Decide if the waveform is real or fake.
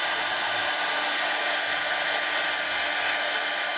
real